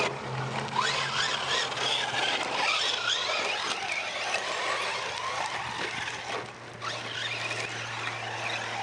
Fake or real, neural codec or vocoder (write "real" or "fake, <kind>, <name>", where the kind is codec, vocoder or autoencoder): real